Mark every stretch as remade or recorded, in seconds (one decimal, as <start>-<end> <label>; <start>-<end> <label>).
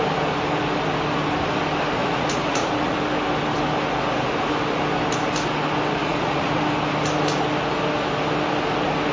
0.0-2.0 recorded; 2.0-3.0 remade; 3.0-6.0 recorded; 6.0-6.6 remade; 6.6-9.1 recorded